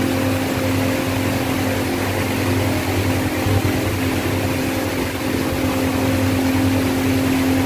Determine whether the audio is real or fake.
real